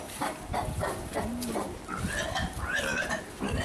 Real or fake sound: fake